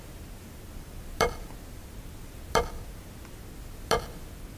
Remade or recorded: recorded